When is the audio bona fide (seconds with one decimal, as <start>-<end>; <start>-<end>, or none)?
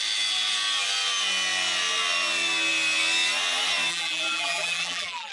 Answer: 0.0-3.9